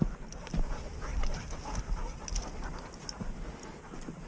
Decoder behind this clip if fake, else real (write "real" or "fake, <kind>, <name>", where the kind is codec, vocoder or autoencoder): real